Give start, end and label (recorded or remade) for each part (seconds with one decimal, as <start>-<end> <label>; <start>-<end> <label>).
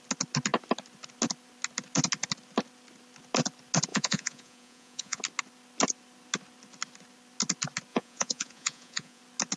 0.0-3.9 recorded; 3.9-5.2 remade; 5.2-7.9 recorded; 7.9-9.2 remade; 9.2-9.6 recorded